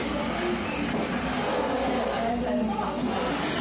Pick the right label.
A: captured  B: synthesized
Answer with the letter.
A